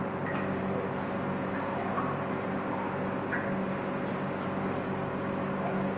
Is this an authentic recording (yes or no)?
yes